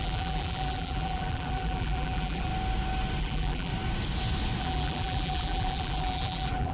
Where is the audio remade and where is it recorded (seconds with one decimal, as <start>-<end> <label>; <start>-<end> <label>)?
0.0-2.5 remade; 2.5-3.2 recorded; 3.2-3.7 remade; 3.7-4.6 recorded; 4.6-6.7 remade